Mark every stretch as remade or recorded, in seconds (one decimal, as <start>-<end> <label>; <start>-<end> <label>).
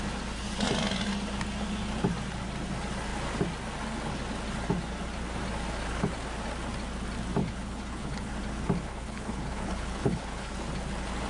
0.0-7.4 recorded; 7.4-8.3 remade; 8.3-8.9 recorded; 8.9-10.5 remade; 10.5-11.3 recorded